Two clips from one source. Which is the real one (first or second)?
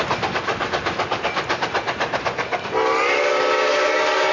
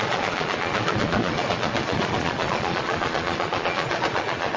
first